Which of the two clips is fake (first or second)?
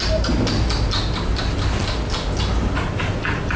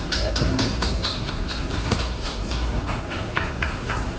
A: second